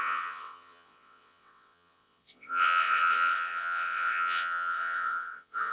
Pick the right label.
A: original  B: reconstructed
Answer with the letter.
B